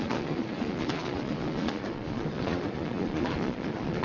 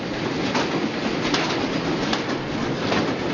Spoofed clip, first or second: first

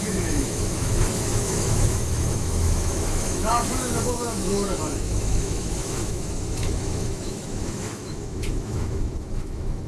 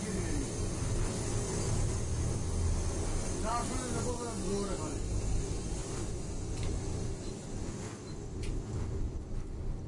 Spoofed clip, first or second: first